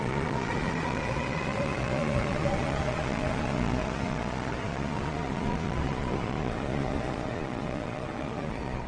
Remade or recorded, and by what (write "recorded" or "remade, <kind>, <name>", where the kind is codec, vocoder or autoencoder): remade, vocoder, Vocos